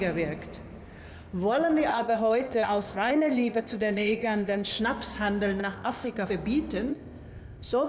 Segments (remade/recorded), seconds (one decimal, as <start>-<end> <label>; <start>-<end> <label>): 0.0-1.9 recorded; 1.9-4.8 remade; 4.8-5.6 recorded; 5.6-6.3 remade; 6.3-6.9 recorded; 6.9-7.9 remade